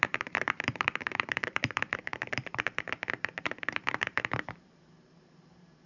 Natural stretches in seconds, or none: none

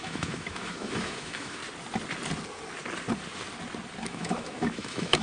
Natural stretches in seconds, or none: 1.6-4.0

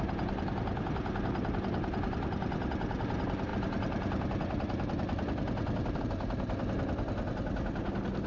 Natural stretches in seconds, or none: 0.0-8.3